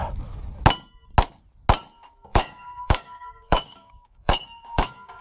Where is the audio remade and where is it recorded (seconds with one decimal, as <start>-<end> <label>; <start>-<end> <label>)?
0.0-2.3 recorded; 2.3-5.2 remade